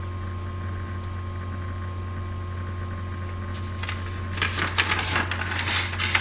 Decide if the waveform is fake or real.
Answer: real